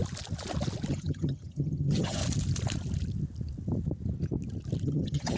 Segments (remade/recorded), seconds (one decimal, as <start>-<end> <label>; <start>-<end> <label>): 0.0-0.9 recorded; 0.9-2.2 remade; 2.2-4.8 recorded; 4.8-5.4 remade